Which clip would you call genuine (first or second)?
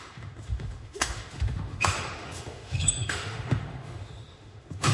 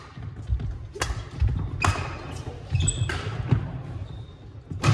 second